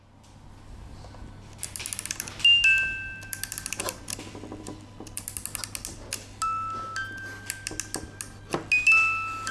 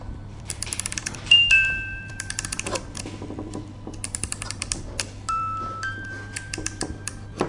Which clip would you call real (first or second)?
first